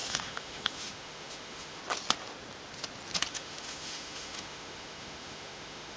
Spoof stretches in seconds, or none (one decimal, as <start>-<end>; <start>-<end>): 0.0-1.8; 3.3-6.0